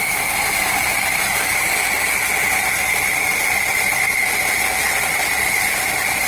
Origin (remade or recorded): recorded